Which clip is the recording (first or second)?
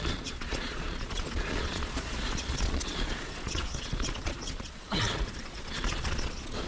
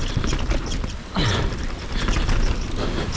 second